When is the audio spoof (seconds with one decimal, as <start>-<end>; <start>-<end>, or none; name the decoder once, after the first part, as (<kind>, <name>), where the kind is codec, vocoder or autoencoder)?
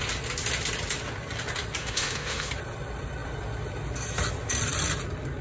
1.8-2.5 (autoencoder, DAC-VAE)